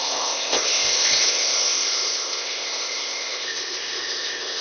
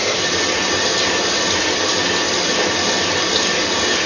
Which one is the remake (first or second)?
first